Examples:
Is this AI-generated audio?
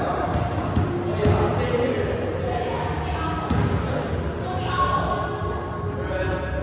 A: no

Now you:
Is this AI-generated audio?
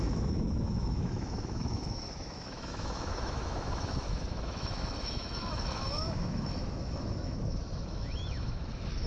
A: yes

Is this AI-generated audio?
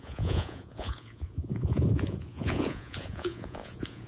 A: yes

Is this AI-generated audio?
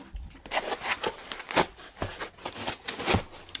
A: no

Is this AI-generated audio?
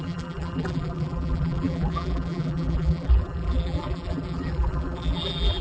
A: yes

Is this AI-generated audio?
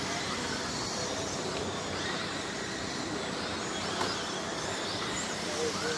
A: no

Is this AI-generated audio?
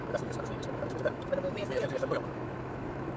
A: yes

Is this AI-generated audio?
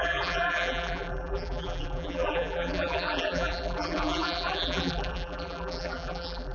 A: yes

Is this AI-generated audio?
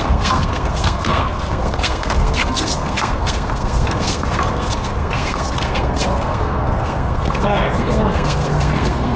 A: yes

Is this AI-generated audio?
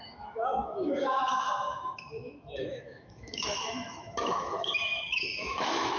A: yes